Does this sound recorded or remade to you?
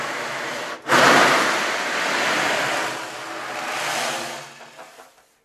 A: recorded